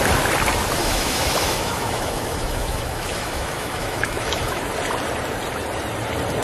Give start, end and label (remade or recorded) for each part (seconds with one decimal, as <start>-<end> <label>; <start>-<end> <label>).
0.0-0.8 recorded; 0.8-4.6 remade; 4.6-6.4 recorded